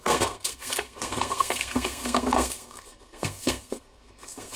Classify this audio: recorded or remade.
remade